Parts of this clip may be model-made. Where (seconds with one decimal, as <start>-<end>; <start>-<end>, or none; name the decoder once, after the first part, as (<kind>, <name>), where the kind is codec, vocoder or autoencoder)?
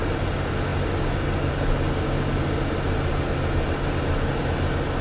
none